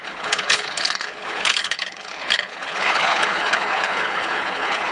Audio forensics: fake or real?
fake